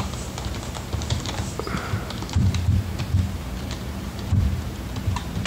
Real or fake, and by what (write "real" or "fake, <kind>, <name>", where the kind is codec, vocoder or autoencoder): fake, vocoder, BigVGAN v2